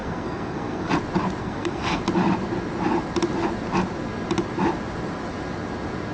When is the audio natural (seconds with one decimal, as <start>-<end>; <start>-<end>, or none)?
0.9-1.4; 2.0-6.1

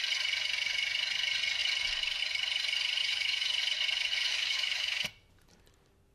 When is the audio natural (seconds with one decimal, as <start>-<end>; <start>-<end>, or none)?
0.0-3.0; 3.6-4.3; 5.1-6.1

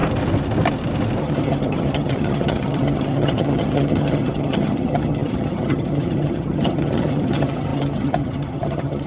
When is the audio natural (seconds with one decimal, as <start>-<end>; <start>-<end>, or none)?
0.0-1.2